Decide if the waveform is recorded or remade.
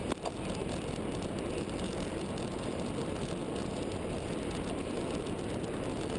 recorded